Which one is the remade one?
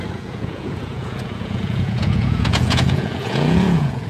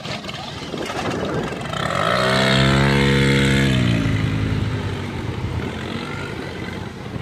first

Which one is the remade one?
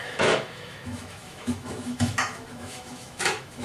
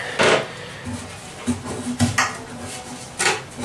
first